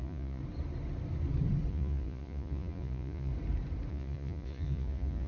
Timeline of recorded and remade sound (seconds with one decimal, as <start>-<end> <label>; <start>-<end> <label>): 0.0-0.4 remade; 0.4-1.7 recorded; 1.7-3.3 remade; 3.3-3.9 recorded; 3.9-5.3 remade